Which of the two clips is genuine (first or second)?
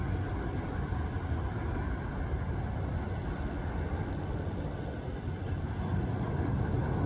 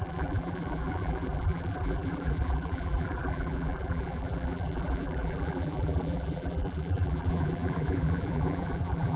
first